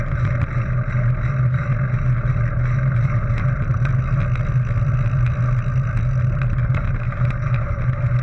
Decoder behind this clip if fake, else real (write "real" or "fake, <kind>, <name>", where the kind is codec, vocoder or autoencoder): real